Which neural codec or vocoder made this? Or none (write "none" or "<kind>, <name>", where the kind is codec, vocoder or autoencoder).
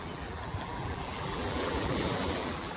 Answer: vocoder, BigVGAN v2